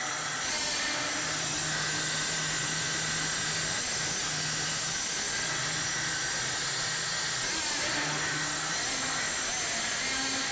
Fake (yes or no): no